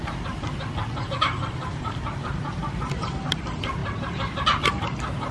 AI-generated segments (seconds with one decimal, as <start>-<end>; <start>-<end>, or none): 0.0-3.2